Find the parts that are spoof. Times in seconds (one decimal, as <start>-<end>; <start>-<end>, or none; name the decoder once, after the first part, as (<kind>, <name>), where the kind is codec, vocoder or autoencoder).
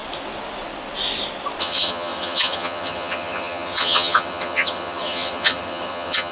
1.6-6.3 (vocoder, HiFi-GAN)